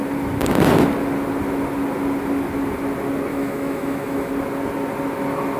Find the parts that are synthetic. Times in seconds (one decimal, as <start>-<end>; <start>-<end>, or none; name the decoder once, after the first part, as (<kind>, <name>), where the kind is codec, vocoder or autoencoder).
3.3-4.3 (autoencoder, DAC-VAE)